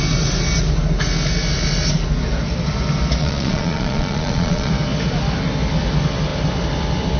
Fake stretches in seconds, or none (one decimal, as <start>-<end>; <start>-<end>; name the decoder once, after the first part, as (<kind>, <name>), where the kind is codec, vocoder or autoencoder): 3.2-4.7 (vocoder, Vocos)